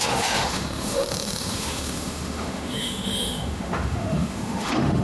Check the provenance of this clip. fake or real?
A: fake